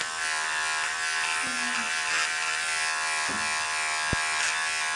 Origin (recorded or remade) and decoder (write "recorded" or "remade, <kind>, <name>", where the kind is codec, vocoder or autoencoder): recorded